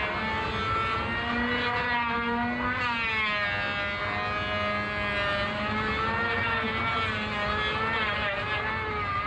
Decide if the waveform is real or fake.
real